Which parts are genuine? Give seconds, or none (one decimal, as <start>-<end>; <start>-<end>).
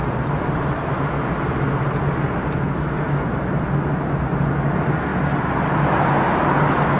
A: 0.0-7.0